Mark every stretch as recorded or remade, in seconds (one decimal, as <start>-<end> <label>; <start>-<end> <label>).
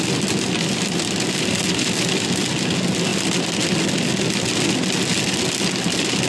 0.0-6.3 recorded